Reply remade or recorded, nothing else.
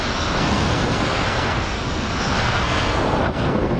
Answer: remade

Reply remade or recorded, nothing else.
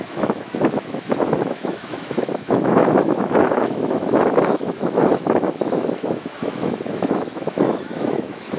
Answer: remade